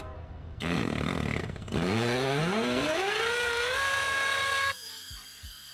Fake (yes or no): yes